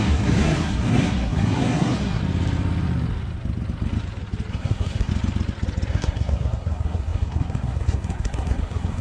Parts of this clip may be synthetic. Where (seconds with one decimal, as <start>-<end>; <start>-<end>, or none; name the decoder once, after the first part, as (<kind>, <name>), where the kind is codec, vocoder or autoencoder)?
0.0-2.2 (codec, SNAC); 4.5-5.1; 5.9-9.0